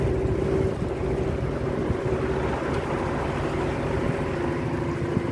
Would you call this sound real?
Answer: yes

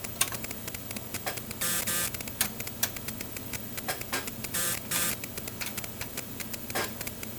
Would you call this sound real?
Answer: no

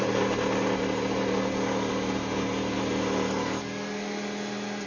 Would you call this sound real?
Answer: yes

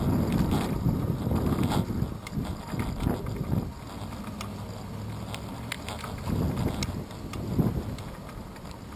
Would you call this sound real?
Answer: yes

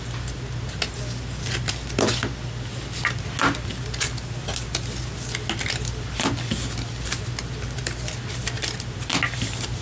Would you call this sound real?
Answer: yes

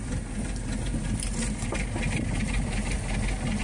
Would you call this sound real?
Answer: yes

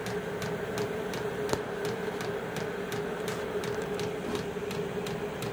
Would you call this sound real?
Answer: yes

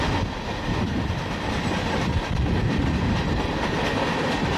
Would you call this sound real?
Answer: yes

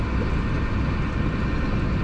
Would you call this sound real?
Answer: yes